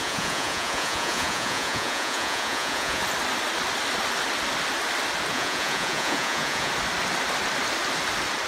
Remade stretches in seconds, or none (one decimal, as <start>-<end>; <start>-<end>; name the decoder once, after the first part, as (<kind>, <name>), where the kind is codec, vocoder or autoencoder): 0.0-3.0 (vocoder, Vocos); 5.3-6.7